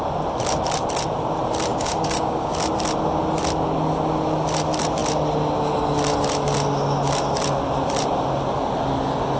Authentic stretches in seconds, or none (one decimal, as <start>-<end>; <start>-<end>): 0.0-1.7; 2.5-9.4